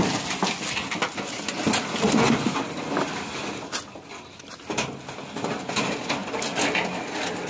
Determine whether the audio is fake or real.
real